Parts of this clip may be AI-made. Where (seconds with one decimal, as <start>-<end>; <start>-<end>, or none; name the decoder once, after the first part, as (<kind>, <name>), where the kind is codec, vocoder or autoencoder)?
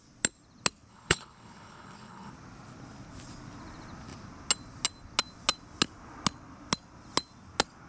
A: 0.9-2.3 (codec, HILCodec)